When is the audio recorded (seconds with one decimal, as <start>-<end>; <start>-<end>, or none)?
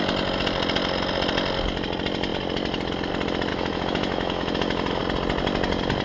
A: 0.0-3.5; 5.0-6.0